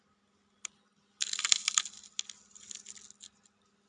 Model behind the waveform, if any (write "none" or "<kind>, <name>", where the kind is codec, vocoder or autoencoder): none